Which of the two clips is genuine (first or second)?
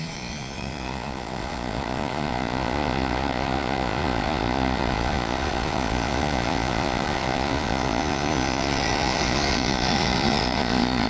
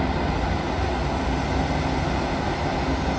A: second